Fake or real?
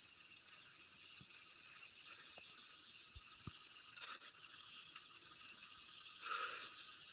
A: real